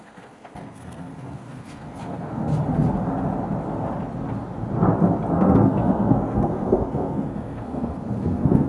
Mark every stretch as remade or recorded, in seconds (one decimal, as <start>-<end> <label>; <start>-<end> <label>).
0.0-2.5 remade; 2.5-5.3 recorded; 5.3-8.7 remade